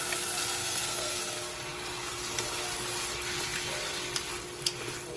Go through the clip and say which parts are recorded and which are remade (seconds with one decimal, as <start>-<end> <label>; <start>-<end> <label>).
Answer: 0.0-0.6 recorded; 0.6-1.2 remade; 1.2-5.2 recorded